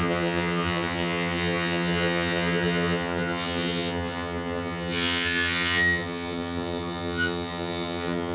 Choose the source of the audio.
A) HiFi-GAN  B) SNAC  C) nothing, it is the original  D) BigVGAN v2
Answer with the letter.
A